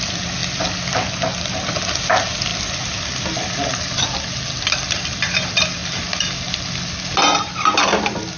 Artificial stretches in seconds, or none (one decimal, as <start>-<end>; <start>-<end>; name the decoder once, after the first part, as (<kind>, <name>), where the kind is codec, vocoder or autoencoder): none